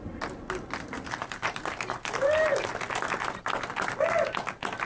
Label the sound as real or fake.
real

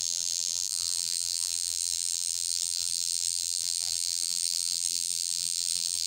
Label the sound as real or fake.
fake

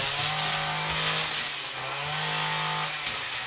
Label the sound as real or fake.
real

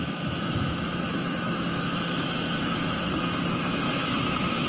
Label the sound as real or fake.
fake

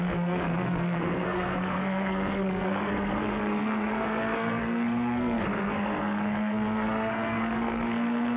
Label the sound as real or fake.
fake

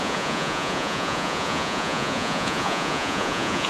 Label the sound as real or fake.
fake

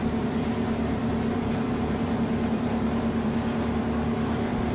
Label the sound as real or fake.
fake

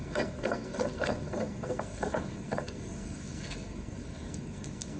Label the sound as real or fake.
fake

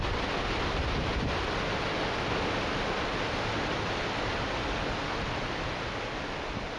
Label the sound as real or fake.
real